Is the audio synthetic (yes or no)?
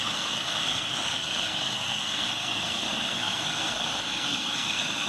yes